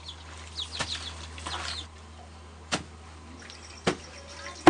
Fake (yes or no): no